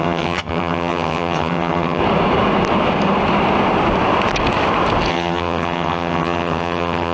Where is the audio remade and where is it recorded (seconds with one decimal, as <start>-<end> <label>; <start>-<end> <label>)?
0.0-2.0 remade; 2.0-5.1 recorded; 5.1-7.1 remade